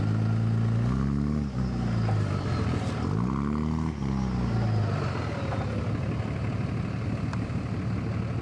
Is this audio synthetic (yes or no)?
no